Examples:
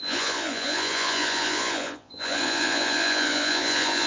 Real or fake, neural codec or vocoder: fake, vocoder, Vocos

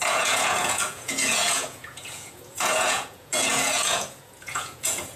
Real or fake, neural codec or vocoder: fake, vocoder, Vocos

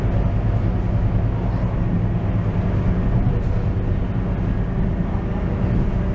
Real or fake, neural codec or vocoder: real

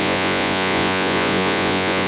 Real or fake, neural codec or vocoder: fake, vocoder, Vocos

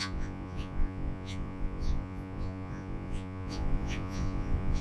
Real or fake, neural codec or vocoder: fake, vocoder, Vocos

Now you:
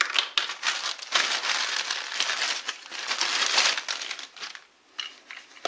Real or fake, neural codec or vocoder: real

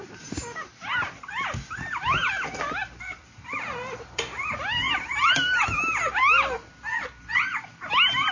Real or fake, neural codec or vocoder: real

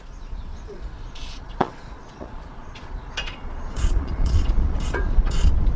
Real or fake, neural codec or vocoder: fake, vocoder, Vocos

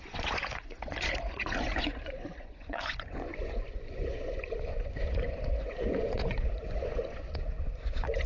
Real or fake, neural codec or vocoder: fake, vocoder, Vocos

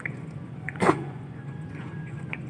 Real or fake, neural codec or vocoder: fake, vocoder, Vocos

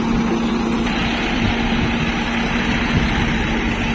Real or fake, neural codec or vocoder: real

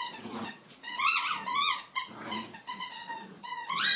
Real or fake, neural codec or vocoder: fake, vocoder, Vocos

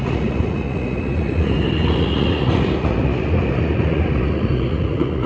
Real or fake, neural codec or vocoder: fake, vocoder, Vocos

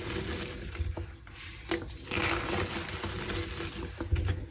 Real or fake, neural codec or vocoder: real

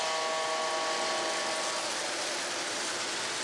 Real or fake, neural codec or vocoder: real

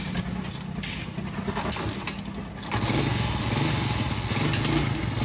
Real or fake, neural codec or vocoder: real